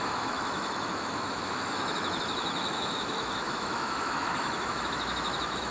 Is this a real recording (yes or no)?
no